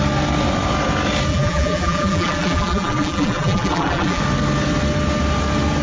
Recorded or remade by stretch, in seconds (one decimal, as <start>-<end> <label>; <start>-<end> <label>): 0.0-1.3 recorded; 1.3-4.2 remade; 4.2-5.8 recorded